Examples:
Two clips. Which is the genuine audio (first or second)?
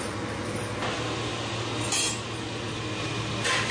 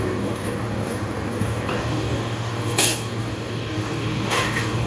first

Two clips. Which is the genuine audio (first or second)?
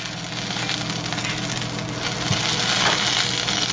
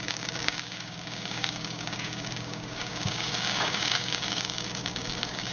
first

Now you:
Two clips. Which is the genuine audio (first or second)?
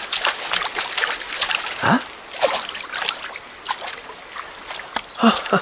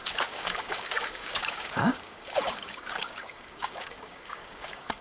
first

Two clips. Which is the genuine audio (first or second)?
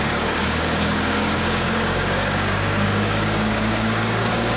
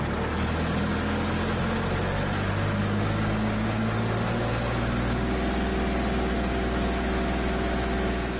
second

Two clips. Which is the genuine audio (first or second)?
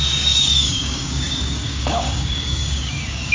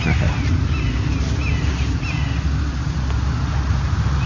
second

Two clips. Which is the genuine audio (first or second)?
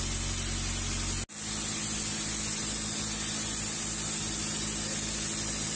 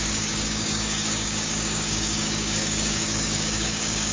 first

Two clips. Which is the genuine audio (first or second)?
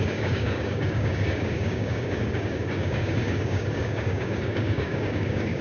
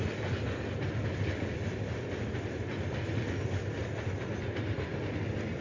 second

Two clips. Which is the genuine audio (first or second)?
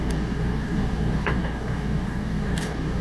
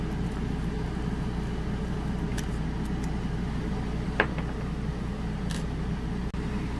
second